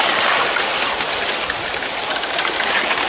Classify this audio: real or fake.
real